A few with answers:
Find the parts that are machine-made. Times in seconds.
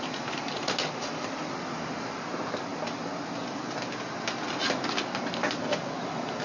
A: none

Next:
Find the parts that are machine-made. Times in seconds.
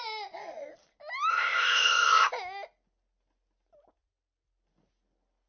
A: 1.3-2.3 (codec, ZipCodec)